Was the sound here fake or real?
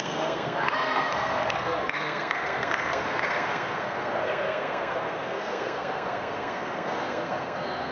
fake